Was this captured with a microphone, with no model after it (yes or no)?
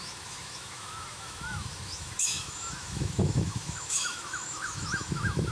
no